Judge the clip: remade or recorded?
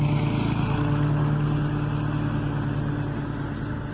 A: recorded